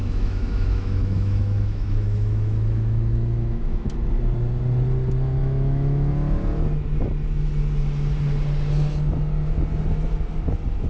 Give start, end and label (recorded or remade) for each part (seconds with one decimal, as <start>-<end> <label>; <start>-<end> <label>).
0.0-3.9 remade; 3.9-5.4 recorded; 5.4-6.1 remade; 6.1-10.9 recorded

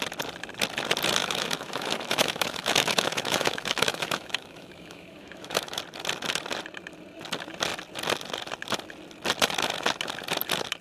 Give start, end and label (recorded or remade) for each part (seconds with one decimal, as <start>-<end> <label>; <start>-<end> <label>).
0.0-1.2 recorded; 1.2-5.8 remade; 5.8-10.8 recorded

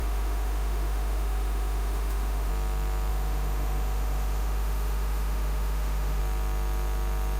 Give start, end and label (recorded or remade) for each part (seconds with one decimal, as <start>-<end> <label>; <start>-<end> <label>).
0.0-2.5 remade; 2.5-3.1 recorded; 3.1-6.2 remade; 6.2-7.4 recorded